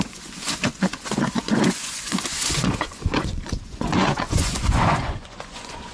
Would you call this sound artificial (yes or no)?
yes